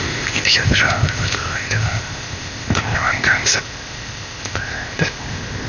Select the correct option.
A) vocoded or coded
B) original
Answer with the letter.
A